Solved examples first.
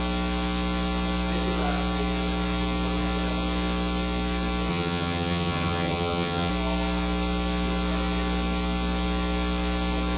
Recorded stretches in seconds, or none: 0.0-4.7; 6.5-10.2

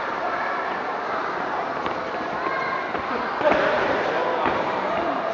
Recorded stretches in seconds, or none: 1.2-3.4